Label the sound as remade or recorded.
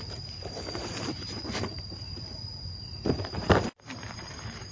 remade